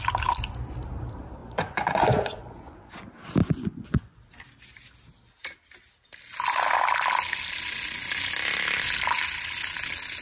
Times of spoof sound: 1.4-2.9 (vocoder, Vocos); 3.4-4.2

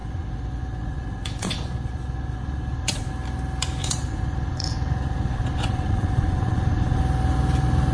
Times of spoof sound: 0.0-3.1 (vocoder, Vocos); 3.8-7.0

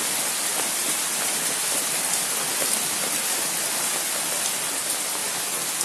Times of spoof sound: none

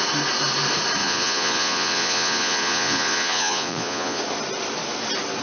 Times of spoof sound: 1.0-4.2 (vocoder, Vocos)